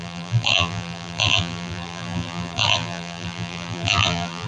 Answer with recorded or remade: remade